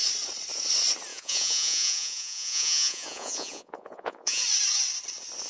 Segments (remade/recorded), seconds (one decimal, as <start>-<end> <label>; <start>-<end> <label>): 0.0-1.1 recorded; 1.1-4.4 remade; 4.4-5.5 recorded